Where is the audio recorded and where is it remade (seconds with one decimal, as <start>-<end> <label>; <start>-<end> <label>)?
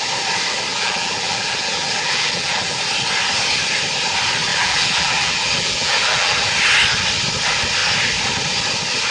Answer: 0.0-0.7 recorded; 0.7-2.8 remade; 2.8-4.5 recorded; 4.5-6.5 remade; 6.5-9.1 recorded